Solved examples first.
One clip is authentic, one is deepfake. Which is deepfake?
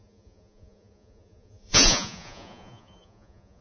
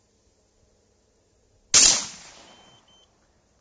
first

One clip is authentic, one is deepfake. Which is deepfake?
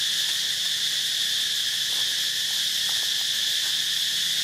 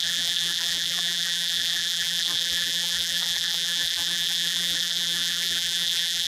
second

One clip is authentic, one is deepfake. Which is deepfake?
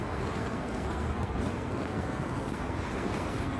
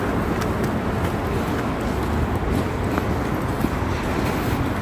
first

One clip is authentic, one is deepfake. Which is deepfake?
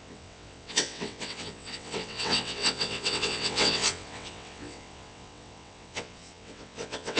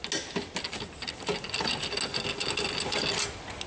first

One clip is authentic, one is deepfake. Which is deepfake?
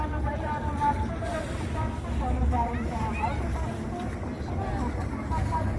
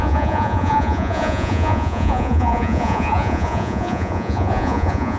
second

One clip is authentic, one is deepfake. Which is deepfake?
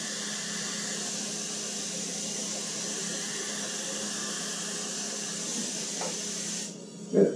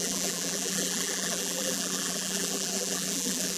second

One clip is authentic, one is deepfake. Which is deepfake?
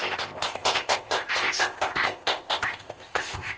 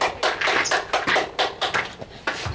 first